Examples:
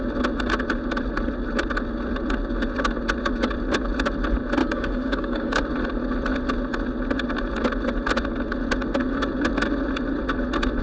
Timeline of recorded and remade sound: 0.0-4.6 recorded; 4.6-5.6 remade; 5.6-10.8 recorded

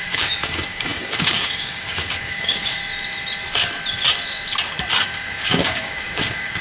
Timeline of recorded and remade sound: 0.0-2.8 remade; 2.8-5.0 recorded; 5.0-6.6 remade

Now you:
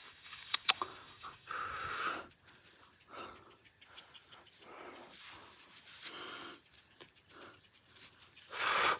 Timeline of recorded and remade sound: 0.0-2.0 remade; 2.0-9.0 recorded